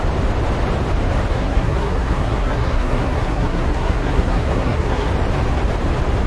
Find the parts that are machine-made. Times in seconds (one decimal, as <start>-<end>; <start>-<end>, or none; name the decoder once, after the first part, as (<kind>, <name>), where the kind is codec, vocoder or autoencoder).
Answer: 1.3-5.1 (codec, SNAC)